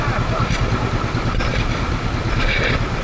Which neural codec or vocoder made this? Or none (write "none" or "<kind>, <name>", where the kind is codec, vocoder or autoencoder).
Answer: none